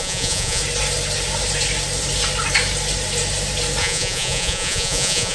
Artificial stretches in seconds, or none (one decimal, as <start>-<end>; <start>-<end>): 0.0-0.6; 3.8-5.3